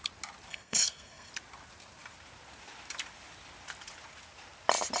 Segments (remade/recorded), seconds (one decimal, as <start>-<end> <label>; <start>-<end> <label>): 0.0-0.5 recorded; 0.5-1.3 remade; 1.3-5.0 recorded